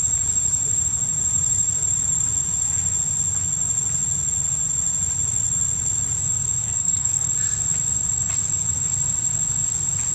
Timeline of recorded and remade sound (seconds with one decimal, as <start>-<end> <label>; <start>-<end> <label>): 0.0-6.6 recorded; 6.6-7.3 remade; 7.3-10.1 recorded